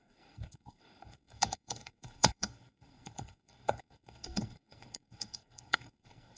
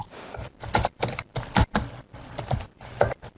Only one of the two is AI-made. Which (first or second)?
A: first